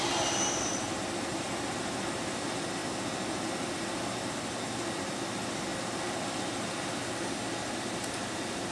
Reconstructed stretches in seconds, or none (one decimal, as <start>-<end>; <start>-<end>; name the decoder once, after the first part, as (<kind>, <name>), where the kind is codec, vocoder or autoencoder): none